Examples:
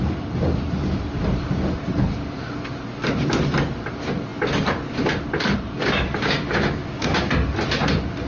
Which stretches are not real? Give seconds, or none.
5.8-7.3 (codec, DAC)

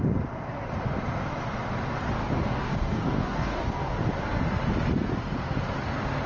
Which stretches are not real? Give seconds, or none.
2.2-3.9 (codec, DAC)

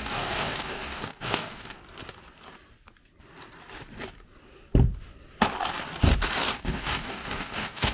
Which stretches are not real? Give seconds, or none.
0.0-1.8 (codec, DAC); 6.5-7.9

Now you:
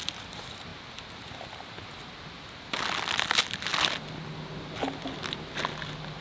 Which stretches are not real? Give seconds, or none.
none

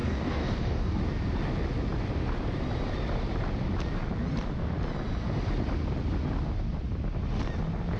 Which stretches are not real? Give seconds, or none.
0.0-1.0 (codec, DAC)

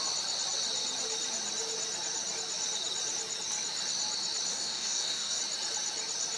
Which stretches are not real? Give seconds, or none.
4.5-5.4 (codec, DAC)

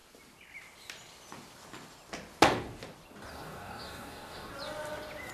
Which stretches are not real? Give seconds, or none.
3.3-4.5 (codec, DAC)